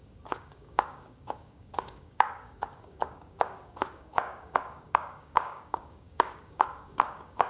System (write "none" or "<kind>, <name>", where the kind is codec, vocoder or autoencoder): codec, DAC